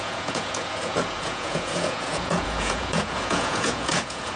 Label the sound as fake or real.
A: fake